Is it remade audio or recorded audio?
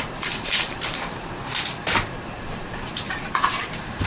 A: remade